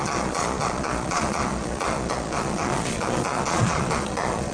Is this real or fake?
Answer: fake